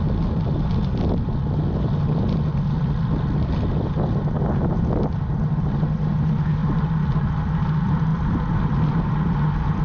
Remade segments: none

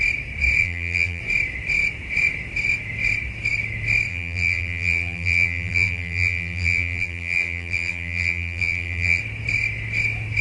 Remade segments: 0.6-1.2 (vocoder, BigVGAN v2); 4.1-9.2

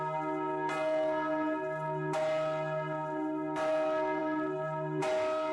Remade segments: none

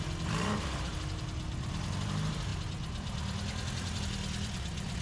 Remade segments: 0.0-0.9 (vocoder, BigVGAN v2); 1.8-2.5; 4.0-5.0